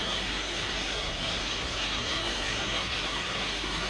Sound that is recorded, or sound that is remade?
remade